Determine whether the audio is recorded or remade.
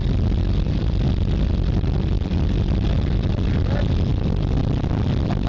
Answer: remade